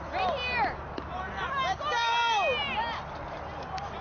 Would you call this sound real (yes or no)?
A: yes